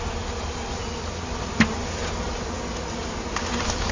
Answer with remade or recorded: recorded